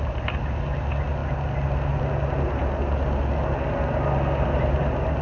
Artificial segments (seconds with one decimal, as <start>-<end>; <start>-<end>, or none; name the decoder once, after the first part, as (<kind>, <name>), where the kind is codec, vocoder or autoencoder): none